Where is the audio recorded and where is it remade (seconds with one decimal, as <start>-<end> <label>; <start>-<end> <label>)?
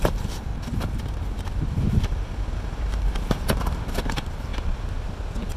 0.0-0.5 remade; 0.5-2.0 recorded; 2.0-4.5 remade; 4.5-5.6 recorded